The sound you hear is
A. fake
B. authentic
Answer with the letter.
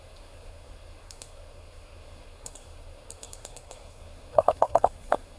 A